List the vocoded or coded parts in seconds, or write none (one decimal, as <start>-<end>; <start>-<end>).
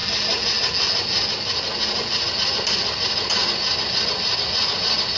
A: none